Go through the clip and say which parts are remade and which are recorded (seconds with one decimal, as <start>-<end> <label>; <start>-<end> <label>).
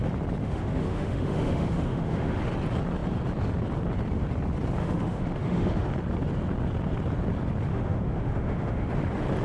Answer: 0.0-0.4 recorded; 0.4-2.4 remade; 2.4-4.8 recorded; 4.8-5.9 remade; 5.9-7.7 recorded; 7.7-8.9 remade; 8.9-9.4 recorded